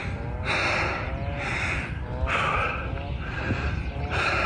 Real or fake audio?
real